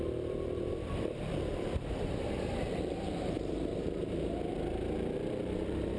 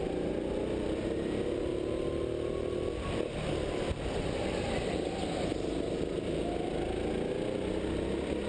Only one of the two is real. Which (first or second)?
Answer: second